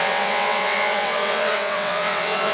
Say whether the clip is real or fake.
fake